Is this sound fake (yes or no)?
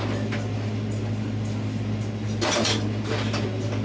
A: no